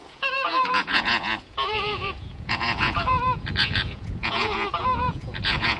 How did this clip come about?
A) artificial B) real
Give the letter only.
A